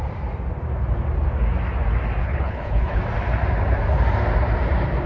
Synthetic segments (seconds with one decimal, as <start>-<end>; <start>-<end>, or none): 2.2-3.0